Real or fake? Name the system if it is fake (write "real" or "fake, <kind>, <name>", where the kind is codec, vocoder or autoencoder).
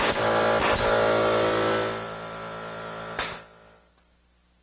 real